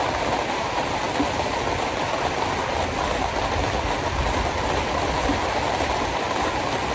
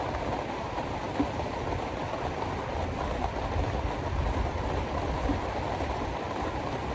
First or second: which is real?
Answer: first